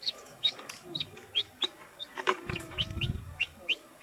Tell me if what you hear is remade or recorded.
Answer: remade